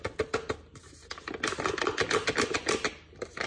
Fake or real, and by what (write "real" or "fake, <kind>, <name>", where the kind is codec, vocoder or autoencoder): real